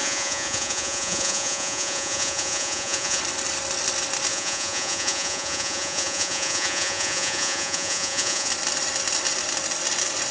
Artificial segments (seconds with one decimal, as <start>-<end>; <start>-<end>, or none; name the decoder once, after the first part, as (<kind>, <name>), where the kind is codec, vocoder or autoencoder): 0.0-3.2 (vocoder, Vocos); 4.3-8.5